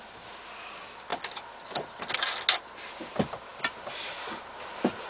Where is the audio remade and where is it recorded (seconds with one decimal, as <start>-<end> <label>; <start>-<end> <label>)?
0.0-5.1 recorded